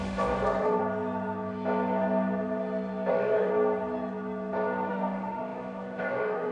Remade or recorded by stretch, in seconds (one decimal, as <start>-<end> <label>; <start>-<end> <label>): 0.0-0.8 remade; 0.8-3.1 recorded; 3.1-3.5 remade; 3.5-4.9 recorded; 4.9-6.5 remade